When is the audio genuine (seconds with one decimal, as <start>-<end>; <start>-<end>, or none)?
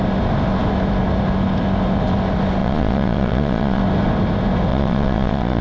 0.0-2.6; 3.8-4.7